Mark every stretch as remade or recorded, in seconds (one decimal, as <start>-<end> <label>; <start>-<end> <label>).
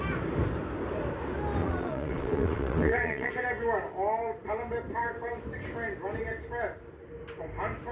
0.0-1.6 recorded; 1.6-3.3 remade; 3.3-7.9 recorded